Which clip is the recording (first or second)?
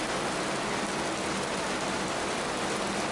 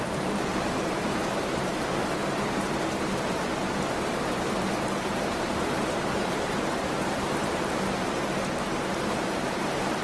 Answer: first